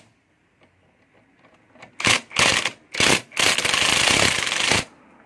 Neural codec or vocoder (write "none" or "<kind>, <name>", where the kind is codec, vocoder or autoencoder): none